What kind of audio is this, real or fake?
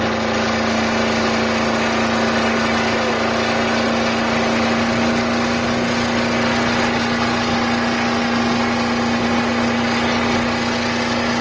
real